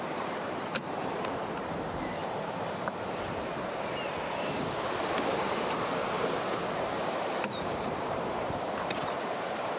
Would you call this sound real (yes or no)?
no